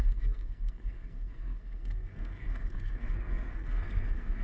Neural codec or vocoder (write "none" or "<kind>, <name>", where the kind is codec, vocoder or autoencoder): codec, SNAC